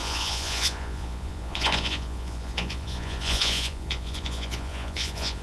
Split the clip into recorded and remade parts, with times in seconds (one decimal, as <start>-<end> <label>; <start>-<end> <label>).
0.0-5.4 remade